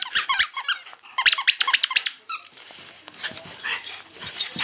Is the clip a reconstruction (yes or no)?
yes